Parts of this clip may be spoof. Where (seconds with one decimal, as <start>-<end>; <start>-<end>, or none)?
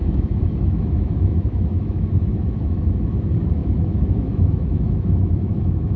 0.0-6.0